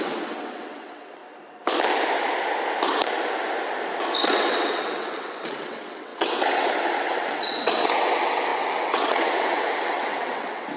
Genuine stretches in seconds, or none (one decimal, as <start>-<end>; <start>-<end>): 1.2-4.2